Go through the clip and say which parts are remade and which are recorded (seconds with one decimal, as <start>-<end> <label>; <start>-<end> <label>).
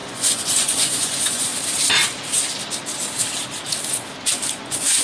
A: 0.0-1.5 remade; 1.5-4.5 recorded; 4.5-5.0 remade